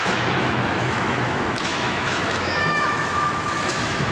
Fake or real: fake